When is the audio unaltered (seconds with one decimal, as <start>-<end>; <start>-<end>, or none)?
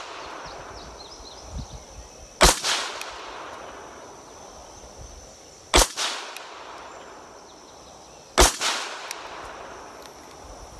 0.0-10.8